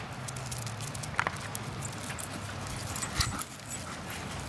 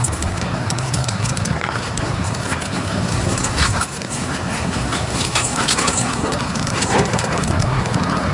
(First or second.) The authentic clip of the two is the first